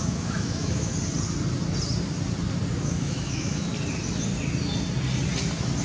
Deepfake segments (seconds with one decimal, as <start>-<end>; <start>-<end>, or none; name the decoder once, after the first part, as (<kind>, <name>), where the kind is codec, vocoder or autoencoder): 0.0-0.9 (autoencoder, DAC-VAE); 2.7-3.7